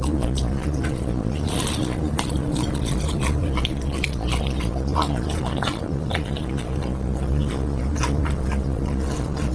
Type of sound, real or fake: fake